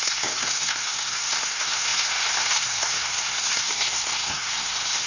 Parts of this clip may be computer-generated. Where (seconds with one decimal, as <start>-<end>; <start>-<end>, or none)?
0.0-5.1